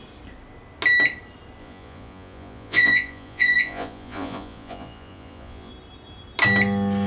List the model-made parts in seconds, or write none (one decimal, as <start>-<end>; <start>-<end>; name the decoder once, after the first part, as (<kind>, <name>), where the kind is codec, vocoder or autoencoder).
1.6-5.7 (vocoder, Vocos)